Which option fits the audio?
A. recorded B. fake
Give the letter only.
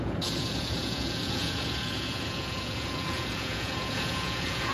B